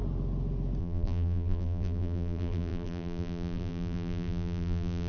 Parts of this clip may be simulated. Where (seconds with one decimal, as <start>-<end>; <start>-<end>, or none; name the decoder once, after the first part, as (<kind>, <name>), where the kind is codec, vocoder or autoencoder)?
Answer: 0.8-5.1 (vocoder, BigVGAN v2)

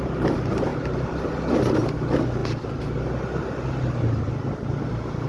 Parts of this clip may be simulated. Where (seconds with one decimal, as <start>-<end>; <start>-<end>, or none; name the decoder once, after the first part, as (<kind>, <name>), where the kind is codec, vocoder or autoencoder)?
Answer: none

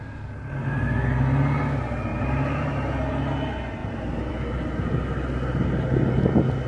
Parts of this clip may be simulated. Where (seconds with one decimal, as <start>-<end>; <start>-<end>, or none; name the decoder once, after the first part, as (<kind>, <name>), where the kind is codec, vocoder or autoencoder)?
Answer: 2.1-2.9 (vocoder, BigVGAN v2); 3.8-4.3

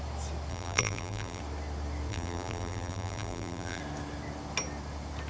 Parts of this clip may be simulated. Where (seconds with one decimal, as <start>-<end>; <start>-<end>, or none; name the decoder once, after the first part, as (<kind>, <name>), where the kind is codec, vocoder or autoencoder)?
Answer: 0.5-1.4 (vocoder, BigVGAN v2); 2.1-3.8

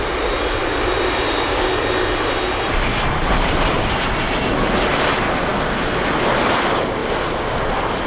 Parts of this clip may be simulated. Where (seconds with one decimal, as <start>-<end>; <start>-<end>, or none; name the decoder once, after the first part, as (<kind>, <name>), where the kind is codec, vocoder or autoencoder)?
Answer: 0.6-3.7 (vocoder, BigVGAN v2)